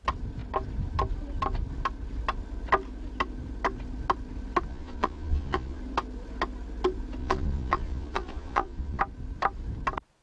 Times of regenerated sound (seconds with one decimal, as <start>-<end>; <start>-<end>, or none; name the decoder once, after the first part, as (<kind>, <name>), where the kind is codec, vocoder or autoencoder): 4.7-5.8 (vocoder, Vocos); 7.2-9.0